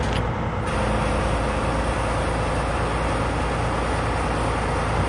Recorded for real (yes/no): yes